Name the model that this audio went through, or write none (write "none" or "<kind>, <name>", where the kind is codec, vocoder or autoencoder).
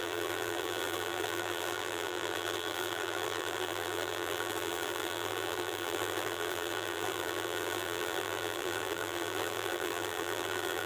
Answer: vocoder, BigVGAN v2